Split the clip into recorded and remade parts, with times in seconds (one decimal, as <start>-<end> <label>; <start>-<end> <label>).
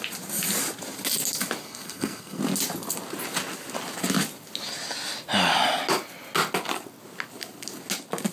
0.0-1.6 recorded; 1.6-2.4 remade; 2.4-8.3 recorded